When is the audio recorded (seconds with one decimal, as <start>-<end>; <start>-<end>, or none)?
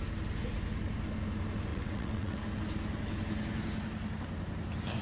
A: 0.0-1.7; 2.4-5.0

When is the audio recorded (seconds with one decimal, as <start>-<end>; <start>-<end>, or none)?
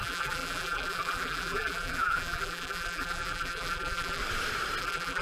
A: 4.2-4.8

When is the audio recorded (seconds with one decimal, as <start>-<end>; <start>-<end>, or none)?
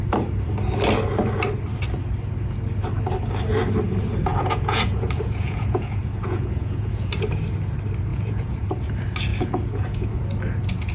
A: 0.0-4.3; 7.1-8.1; 8.7-9.3; 10.1-10.9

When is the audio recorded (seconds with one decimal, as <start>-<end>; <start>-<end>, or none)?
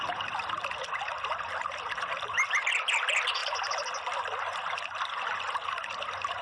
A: 0.0-6.4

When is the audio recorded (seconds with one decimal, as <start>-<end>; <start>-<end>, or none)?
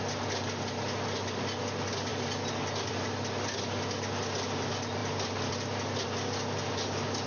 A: 0.0-7.3